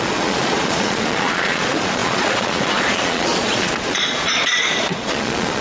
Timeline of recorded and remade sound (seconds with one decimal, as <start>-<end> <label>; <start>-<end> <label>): 0.0-5.6 remade

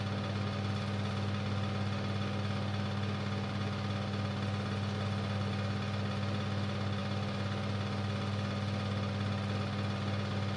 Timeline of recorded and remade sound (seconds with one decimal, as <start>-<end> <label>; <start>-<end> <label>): 0.0-10.6 recorded

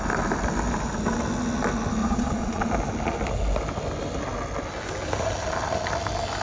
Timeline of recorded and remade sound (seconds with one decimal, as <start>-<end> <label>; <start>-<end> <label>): 0.0-2.0 recorded; 2.0-2.7 remade; 2.7-6.4 recorded